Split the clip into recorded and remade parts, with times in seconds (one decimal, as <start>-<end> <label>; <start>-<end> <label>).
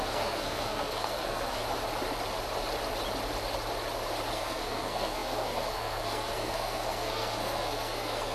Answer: 0.0-1.6 remade; 1.6-4.3 recorded; 4.3-8.3 remade